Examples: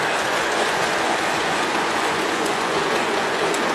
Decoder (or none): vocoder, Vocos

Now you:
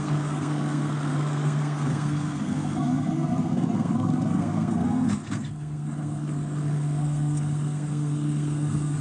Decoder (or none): codec, SNAC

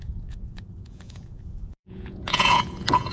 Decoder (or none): vocoder, Vocos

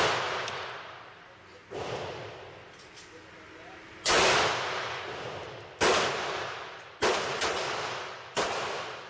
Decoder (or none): none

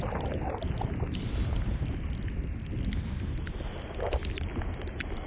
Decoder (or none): none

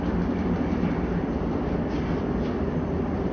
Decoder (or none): none